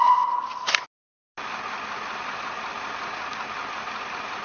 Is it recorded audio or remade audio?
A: recorded